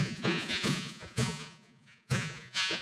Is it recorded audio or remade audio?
remade